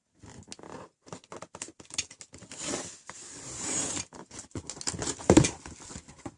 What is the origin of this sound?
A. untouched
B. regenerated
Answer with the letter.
A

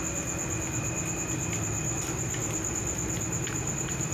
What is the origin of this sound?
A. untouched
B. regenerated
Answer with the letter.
A